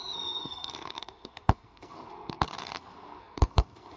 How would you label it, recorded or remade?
remade